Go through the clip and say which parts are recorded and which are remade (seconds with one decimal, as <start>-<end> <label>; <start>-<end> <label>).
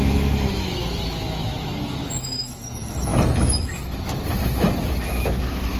0.0-5.8 remade